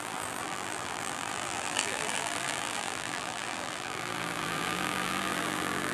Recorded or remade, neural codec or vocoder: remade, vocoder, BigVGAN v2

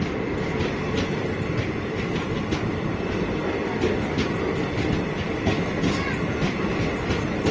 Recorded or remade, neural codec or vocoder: recorded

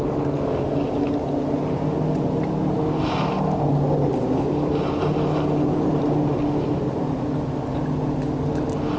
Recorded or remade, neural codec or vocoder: recorded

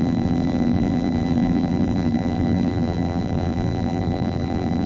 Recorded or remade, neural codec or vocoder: remade, vocoder, BigVGAN v2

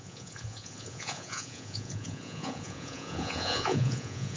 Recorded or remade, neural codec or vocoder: remade, vocoder, Vocos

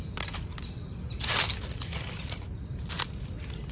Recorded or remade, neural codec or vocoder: recorded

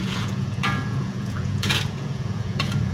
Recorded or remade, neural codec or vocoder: remade, vocoder, Vocos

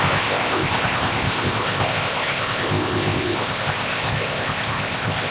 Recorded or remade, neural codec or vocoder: remade, codec, ZipCodec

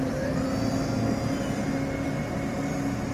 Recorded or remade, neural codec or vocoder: recorded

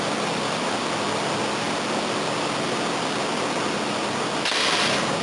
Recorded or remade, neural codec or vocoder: recorded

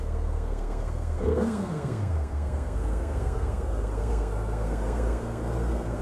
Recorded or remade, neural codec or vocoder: remade, codec, SNAC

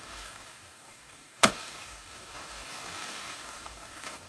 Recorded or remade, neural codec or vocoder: remade, codec, DAC